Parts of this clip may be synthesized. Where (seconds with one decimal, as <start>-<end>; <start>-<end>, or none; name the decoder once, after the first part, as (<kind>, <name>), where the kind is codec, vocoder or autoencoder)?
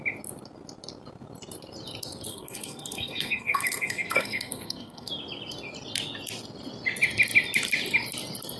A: 2.3-5.1 (codec, SNAC)